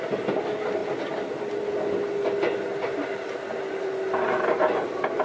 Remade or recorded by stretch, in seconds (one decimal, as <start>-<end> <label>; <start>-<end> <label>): 0.0-5.2 recorded